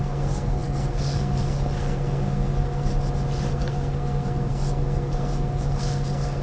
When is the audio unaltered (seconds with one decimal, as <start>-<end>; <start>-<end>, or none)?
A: 2.9-3.5